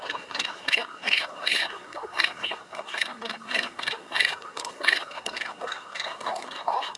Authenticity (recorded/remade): remade